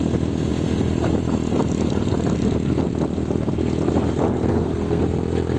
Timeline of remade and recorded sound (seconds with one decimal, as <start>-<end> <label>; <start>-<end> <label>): 0.0-4.5 recorded; 4.5-5.0 remade; 5.0-5.6 recorded